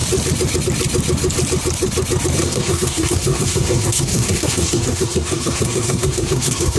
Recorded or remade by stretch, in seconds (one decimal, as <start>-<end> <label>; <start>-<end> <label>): 0.0-2.4 recorded; 2.4-6.8 remade